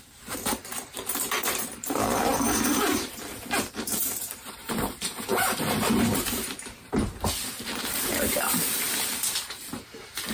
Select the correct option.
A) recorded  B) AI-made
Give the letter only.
B